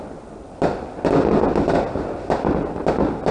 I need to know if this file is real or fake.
real